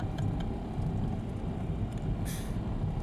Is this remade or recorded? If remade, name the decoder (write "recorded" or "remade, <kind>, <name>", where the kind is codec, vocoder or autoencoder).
recorded